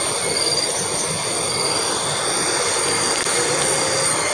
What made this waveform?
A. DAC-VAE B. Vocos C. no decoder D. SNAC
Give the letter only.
C